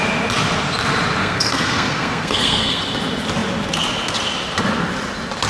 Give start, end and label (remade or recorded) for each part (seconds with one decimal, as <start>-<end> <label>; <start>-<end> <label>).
0.0-1.2 recorded; 1.2-2.8 remade; 2.8-5.5 recorded